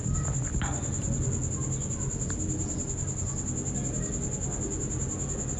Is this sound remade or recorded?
recorded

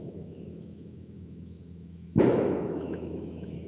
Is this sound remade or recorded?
remade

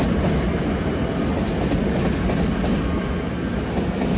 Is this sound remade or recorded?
recorded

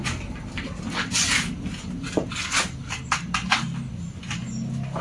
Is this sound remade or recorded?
recorded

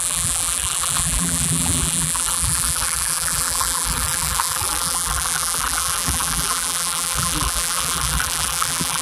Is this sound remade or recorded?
remade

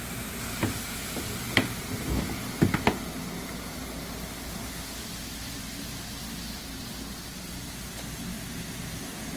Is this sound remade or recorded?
recorded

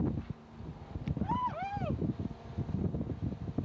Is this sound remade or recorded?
recorded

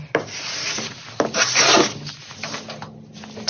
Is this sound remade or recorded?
recorded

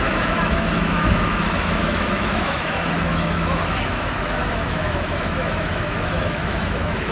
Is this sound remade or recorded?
remade